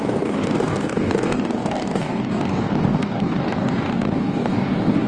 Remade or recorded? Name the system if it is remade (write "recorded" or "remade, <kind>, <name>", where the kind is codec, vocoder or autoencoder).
remade, codec, DAC